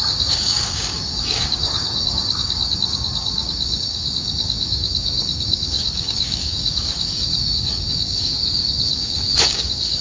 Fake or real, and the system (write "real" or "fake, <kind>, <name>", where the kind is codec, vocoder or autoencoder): fake, codec, DAC